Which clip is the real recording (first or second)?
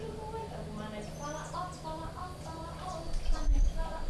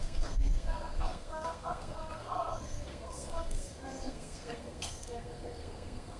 first